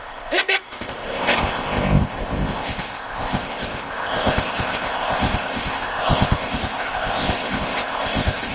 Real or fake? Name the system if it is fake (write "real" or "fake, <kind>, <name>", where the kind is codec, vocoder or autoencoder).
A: fake, codec, ZipCodec